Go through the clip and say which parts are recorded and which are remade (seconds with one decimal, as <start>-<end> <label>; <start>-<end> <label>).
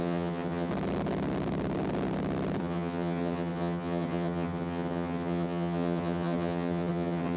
0.0-0.7 remade; 0.7-2.6 recorded; 2.6-7.4 remade